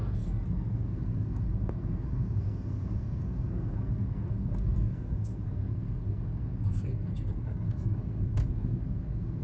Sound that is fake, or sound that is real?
fake